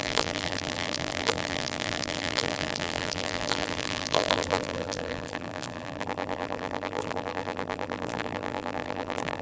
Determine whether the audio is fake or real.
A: fake